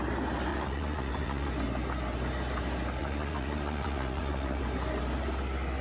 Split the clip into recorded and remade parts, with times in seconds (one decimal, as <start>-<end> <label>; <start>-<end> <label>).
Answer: 0.0-0.5 recorded; 0.5-1.5 remade; 1.5-3.0 recorded; 3.0-4.6 remade; 4.6-5.8 recorded